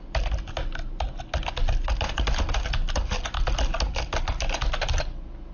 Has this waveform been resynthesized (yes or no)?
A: no